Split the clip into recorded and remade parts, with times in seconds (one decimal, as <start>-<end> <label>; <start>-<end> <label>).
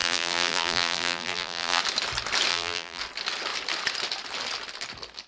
0.0-1.8 remade; 1.8-2.5 recorded; 2.5-3.0 remade; 3.0-5.3 recorded